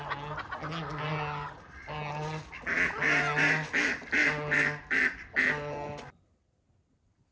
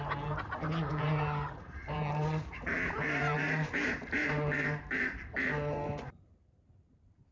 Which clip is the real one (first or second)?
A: first